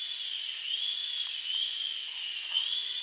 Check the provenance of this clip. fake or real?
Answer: fake